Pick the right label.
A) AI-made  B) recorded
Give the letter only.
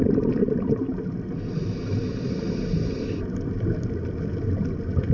B